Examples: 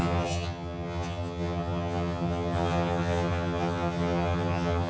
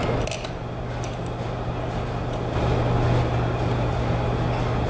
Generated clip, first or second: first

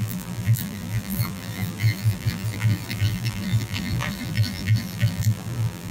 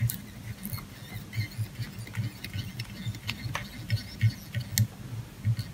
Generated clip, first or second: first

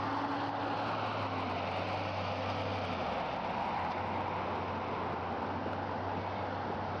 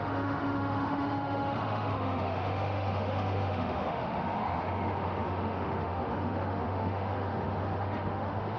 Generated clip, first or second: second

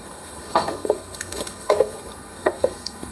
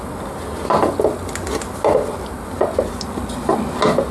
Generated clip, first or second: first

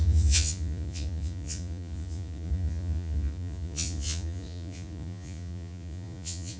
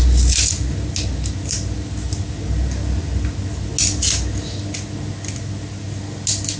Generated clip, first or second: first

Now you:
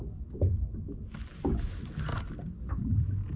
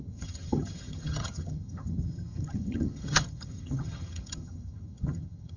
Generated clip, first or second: second